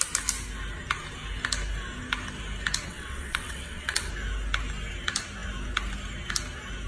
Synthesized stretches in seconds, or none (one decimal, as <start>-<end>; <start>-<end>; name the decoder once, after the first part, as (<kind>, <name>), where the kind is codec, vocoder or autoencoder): 2.9-4.1 (vocoder, WaveNeXt)